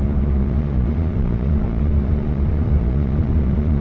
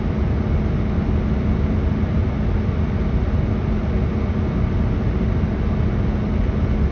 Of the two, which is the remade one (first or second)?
first